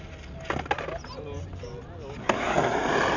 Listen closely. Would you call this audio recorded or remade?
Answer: recorded